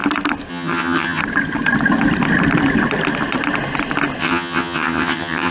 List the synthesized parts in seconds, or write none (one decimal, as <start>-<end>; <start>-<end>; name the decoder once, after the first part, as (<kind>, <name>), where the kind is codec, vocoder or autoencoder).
0.5-1.2 (vocoder, HiFi-GAN); 4.2-5.5